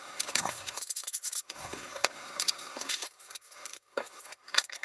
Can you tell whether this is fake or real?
fake